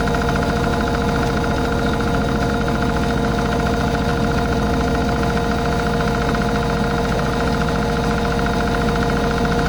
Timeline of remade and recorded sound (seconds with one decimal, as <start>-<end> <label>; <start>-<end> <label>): 0.0-9.7 recorded

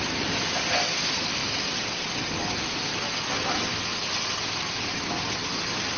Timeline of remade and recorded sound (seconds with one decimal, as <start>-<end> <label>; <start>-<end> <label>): 0.0-6.0 recorded

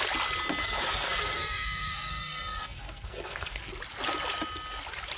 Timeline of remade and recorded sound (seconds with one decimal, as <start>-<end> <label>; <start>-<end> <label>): 0.0-0.6 recorded; 0.6-3.7 remade; 3.7-5.2 recorded

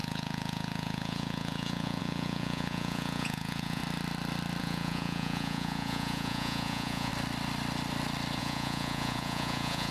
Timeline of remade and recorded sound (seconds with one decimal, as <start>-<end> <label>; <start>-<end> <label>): 0.0-3.8 remade; 3.8-4.6 recorded; 4.6-7.1 remade; 7.1-8.4 recorded; 8.4-9.9 remade

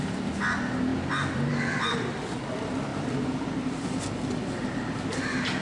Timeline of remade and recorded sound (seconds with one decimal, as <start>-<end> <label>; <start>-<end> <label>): 0.0-0.9 recorded; 0.9-2.4 remade; 2.4-2.9 recorded; 2.9-4.0 remade; 4.0-5.6 recorded